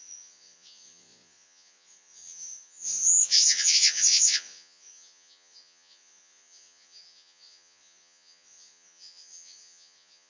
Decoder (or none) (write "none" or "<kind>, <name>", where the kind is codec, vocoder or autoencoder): vocoder, Vocos